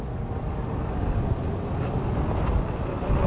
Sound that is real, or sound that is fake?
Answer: real